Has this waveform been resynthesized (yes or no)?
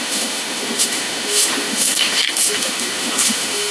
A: yes